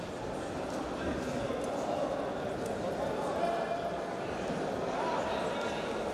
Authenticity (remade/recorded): recorded